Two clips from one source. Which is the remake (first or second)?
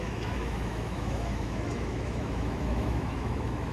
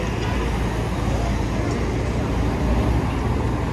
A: first